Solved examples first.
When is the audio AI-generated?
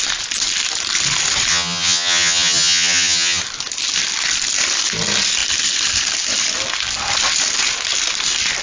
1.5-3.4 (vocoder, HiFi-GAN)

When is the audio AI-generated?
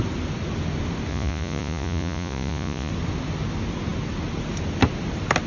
1.1-2.9 (vocoder, Vocos)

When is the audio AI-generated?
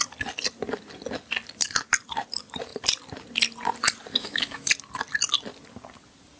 4.2-4.7 (autoencoder, DAC-VAE)